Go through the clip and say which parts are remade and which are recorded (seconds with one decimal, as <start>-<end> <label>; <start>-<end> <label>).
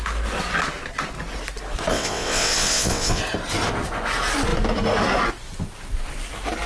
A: 0.0-1.9 recorded; 1.9-3.2 remade; 3.2-6.7 recorded